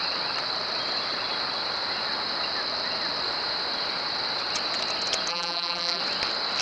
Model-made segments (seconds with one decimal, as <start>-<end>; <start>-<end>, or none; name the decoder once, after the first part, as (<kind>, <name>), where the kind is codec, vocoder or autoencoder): 5.3-6.0 (vocoder, BigVGAN v2)